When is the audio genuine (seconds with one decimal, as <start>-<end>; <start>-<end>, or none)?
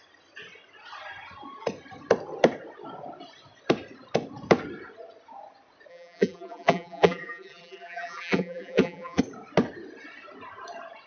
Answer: 0.0-5.9; 9.2-11.1